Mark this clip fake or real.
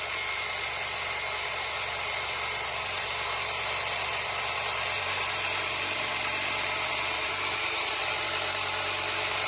fake